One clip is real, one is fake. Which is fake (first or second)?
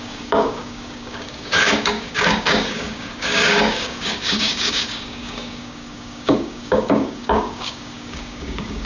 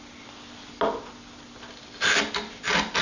first